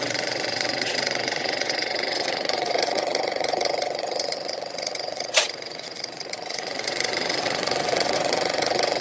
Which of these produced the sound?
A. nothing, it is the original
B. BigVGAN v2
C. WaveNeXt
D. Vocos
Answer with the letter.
C